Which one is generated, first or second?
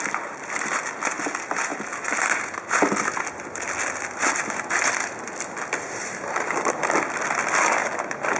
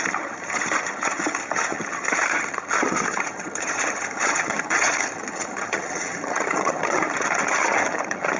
second